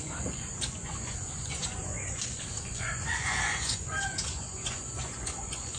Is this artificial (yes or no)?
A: yes